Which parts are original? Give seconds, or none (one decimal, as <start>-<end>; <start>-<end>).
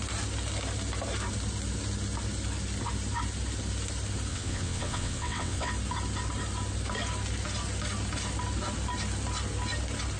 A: 0.0-4.3; 5.7-10.2